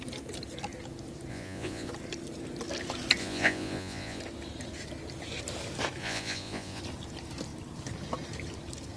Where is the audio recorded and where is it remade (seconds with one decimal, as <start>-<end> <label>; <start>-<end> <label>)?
0.0-1.3 recorded; 1.3-1.9 remade; 1.9-3.2 recorded; 3.2-4.2 remade; 4.2-6.0 recorded; 6.0-6.8 remade; 6.8-9.0 recorded